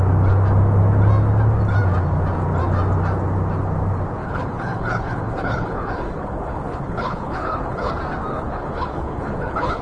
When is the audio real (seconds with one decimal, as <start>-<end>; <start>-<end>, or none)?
0.0-4.2; 7.9-8.3